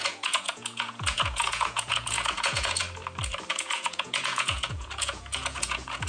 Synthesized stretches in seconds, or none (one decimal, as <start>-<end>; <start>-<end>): 0.0-2.8; 3.5-6.1